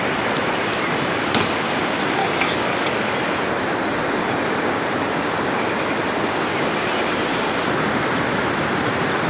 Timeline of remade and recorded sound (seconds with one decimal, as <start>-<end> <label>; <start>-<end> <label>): 0.0-2.2 recorded; 2.2-3.1 remade; 3.1-9.3 recorded